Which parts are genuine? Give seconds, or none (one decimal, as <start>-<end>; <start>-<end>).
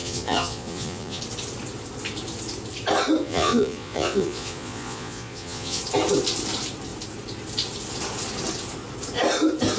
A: 1.2-3.2; 5.8-9.8